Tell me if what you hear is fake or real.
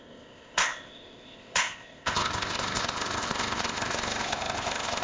fake